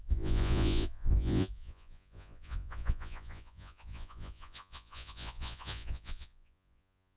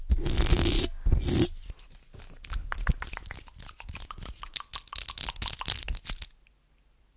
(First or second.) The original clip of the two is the second